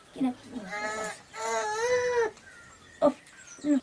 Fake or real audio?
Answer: real